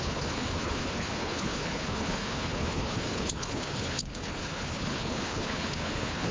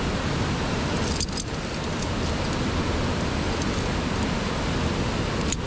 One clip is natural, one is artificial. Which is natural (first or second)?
second